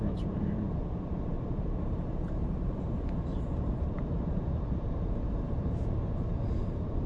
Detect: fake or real fake